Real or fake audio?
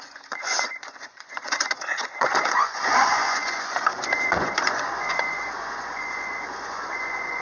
fake